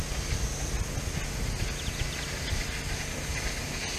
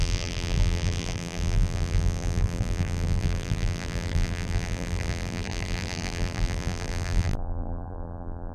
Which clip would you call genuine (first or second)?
first